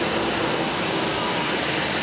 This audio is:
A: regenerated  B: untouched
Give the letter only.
B